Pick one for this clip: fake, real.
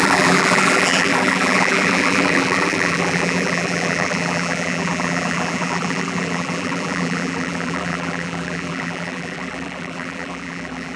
fake